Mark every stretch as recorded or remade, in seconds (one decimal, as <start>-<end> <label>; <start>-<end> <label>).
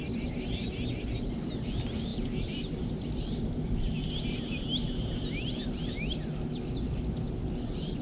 0.0-8.0 recorded